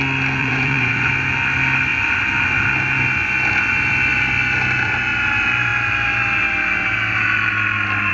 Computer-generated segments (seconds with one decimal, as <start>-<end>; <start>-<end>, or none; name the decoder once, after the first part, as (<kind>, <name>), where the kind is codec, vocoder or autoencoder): 0.4-1.1 (vocoder, Vocos)